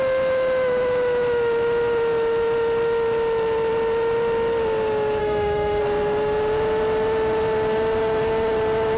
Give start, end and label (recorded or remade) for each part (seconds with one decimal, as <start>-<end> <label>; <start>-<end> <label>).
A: 0.0-5.2 recorded; 5.2-5.8 remade; 5.8-9.0 recorded